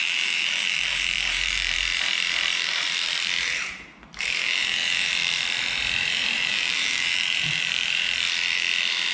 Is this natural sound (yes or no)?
no